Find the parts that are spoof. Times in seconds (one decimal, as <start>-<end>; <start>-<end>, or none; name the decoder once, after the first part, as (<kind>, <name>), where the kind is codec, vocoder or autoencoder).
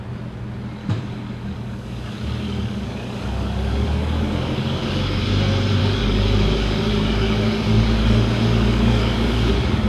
0.8-5.3 (codec, DAC); 5.8-9.9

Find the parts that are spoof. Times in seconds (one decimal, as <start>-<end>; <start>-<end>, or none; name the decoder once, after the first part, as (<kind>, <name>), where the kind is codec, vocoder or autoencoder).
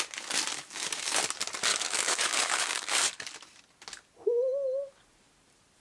0.5-1.2 (codec, DAC); 1.7-3.1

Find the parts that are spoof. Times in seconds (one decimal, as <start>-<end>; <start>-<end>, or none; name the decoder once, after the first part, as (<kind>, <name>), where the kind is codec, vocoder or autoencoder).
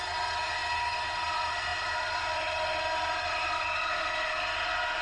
none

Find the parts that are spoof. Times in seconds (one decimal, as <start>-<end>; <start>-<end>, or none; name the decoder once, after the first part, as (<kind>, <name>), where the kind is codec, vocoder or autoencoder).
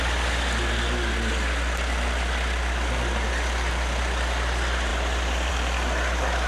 none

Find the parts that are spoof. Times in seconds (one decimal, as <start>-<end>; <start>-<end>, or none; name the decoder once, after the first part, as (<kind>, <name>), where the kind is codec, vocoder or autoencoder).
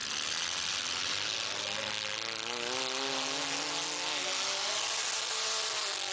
none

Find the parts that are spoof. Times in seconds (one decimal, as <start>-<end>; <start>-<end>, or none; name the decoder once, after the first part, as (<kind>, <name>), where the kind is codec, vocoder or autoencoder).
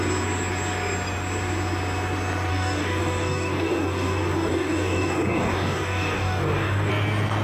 2.5-6.9 (codec, DAC)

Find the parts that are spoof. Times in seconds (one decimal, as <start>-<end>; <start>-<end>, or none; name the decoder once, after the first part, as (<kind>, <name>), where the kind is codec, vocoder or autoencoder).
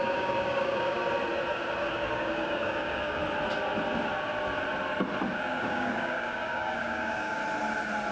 0.0-1.0 (codec, DAC); 1.8-3.2; 5.3-7.4